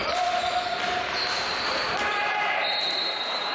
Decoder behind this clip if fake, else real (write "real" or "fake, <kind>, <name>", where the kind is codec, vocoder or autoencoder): real